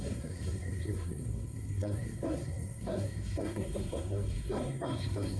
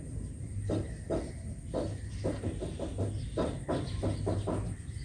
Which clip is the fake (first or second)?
first